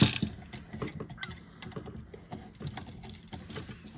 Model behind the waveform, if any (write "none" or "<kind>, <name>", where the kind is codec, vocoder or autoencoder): none